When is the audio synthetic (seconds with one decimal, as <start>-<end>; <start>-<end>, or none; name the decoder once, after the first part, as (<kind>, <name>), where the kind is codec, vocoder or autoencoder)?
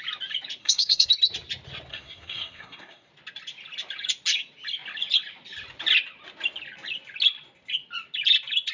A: 0.6-1.1 (codec, SNAC); 1.9-3.1